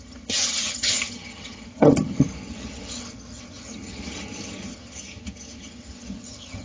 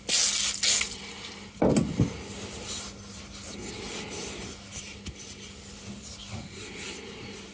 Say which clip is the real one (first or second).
second